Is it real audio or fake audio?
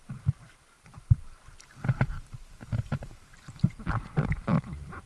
fake